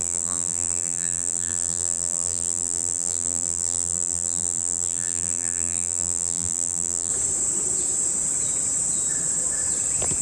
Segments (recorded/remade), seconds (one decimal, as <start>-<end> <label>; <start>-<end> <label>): 0.0-7.1 remade; 7.1-10.2 recorded

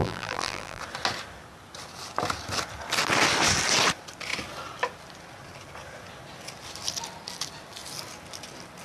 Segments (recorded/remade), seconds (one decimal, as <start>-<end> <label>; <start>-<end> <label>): 0.0-0.8 remade; 0.8-8.8 recorded

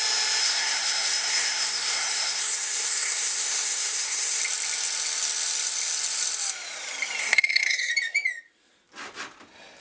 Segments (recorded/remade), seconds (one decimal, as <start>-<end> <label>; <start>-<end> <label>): 0.0-0.4 recorded; 0.4-4.4 remade; 4.4-7.2 recorded; 7.2-7.9 remade; 7.9-9.8 recorded